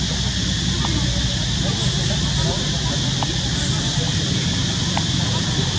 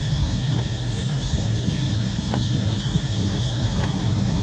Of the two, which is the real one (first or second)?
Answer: first